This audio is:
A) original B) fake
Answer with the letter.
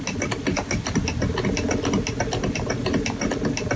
A